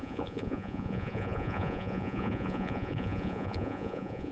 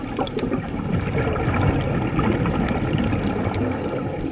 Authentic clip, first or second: second